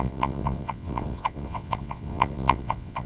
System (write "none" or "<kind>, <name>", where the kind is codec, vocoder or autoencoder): vocoder, WaveNeXt